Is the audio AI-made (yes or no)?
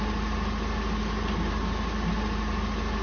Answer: no